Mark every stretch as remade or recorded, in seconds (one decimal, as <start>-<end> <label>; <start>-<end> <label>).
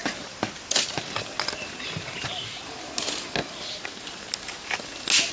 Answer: 0.0-5.3 recorded